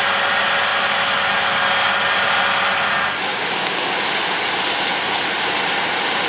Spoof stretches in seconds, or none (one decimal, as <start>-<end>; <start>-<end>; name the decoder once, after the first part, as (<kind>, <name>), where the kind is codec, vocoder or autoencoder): 3.3-3.9 (codec, DAC)